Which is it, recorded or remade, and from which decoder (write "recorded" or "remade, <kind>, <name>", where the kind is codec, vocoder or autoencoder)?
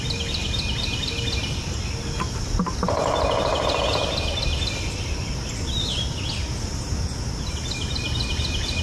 recorded